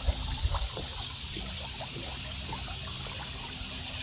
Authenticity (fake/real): real